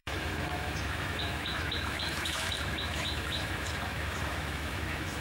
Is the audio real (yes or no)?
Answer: no